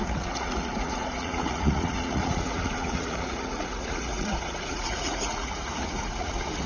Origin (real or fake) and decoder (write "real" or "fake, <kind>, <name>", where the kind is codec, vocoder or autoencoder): fake, vocoder, Vocos